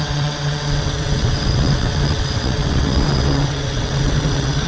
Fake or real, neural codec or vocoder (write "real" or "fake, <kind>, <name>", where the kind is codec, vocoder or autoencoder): fake, vocoder, WaveNeXt